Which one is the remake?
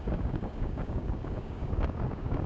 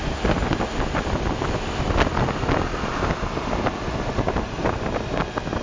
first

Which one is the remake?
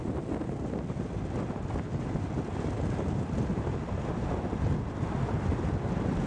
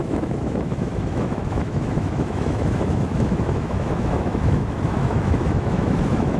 second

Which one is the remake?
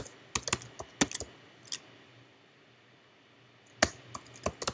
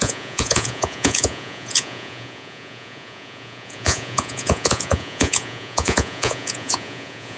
second